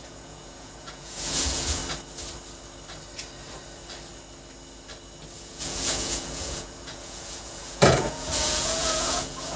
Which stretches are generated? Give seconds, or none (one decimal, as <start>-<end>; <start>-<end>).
0.0-1.8; 5.4-9.6